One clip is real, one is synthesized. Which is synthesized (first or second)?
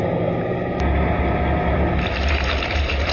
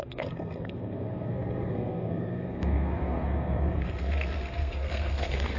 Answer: second